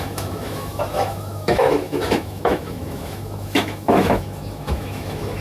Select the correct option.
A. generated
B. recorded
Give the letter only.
A